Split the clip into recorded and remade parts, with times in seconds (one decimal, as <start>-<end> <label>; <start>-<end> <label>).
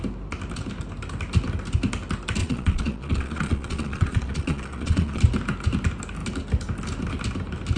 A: 0.0-2.4 recorded; 2.4-5.2 remade; 5.2-7.8 recorded